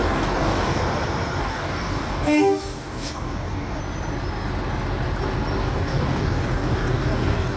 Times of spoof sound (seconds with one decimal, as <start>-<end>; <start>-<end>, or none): 0.0-0.8; 1.4-3.8; 5.6-7.6